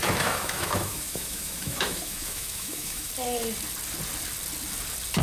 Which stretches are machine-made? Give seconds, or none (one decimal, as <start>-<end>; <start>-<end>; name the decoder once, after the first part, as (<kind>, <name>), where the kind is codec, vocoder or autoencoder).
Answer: 0.0-3.1 (autoencoder, DAC-VAE)